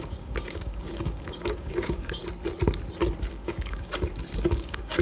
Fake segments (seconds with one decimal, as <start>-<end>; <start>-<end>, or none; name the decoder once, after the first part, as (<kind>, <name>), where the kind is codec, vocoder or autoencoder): 0.0-2.2 (codec, DAC); 3.3-3.9; 4.5-5.0